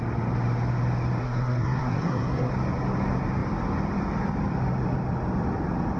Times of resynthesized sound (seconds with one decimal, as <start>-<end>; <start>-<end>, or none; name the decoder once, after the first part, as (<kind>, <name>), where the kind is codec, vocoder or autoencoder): 1.2-2.5 (codec, SNAC)